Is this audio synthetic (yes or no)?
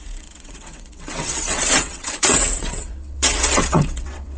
yes